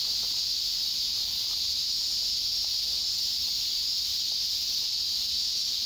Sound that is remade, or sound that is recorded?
recorded